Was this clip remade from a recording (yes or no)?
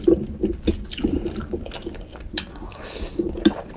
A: no